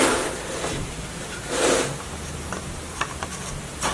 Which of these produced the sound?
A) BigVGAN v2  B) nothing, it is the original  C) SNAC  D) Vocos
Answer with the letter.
B